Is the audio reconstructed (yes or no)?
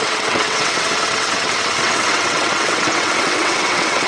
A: yes